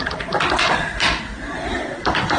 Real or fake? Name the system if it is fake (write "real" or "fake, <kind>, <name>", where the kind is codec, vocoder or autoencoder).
fake, vocoder, BigVGAN v2